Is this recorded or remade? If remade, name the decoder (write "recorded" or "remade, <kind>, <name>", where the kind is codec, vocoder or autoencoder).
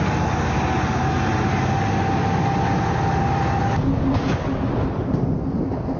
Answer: recorded